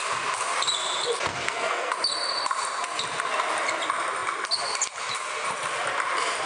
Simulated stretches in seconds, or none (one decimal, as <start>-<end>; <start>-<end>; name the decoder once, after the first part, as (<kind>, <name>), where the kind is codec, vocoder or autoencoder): 1.3-1.9 (codec, SNAC)